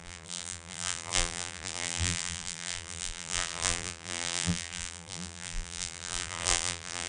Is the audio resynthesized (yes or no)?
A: yes